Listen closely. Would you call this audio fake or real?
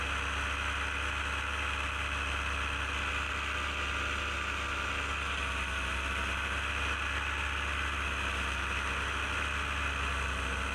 real